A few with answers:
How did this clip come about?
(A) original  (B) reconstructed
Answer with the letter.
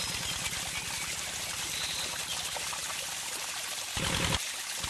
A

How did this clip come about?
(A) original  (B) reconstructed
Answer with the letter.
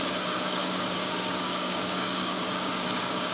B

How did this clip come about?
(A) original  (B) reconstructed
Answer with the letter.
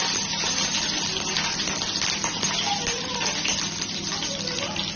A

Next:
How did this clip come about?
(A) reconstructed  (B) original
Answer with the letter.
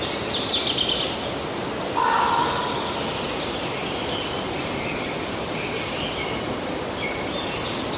B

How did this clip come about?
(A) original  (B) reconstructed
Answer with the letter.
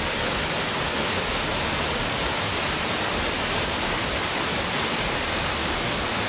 A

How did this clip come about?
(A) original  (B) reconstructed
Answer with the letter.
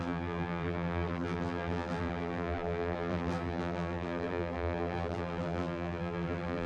B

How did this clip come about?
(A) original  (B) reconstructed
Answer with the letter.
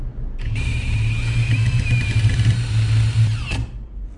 A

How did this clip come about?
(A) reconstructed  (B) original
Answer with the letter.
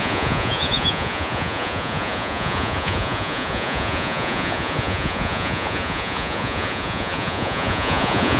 A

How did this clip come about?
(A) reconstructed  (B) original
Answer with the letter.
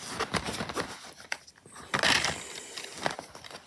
B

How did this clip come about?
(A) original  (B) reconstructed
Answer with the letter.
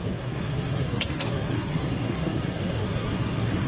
B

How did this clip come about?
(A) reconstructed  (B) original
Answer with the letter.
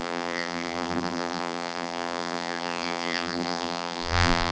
A